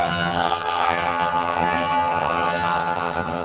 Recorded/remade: remade